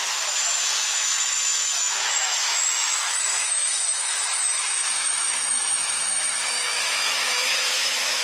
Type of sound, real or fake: fake